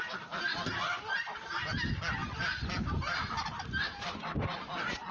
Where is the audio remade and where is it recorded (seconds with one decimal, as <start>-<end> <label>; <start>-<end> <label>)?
0.0-2.2 recorded; 2.2-4.2 remade; 4.2-5.1 recorded